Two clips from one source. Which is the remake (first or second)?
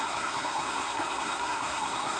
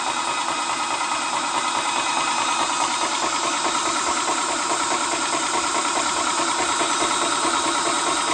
first